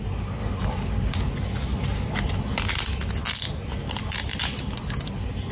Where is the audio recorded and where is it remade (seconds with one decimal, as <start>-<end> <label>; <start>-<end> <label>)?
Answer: 0.0-5.5 recorded